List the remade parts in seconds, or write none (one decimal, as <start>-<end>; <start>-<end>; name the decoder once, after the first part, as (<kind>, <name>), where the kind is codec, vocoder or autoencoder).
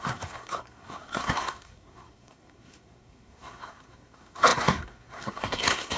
0.0-6.0 (codec, SNAC)